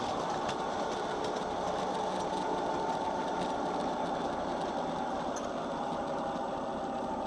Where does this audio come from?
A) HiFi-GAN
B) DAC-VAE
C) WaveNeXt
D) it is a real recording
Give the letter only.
D